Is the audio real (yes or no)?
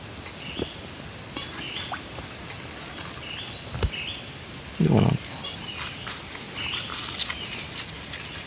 yes